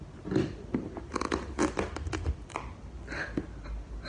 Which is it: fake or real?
real